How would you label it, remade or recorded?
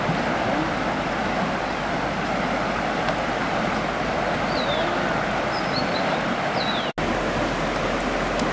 recorded